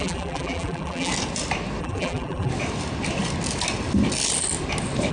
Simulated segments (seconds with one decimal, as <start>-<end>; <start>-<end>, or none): 0.0-1.1; 1.8-2.5